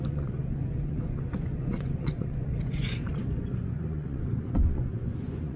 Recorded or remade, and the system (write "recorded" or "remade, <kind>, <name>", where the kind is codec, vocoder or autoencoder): remade, vocoder, Vocos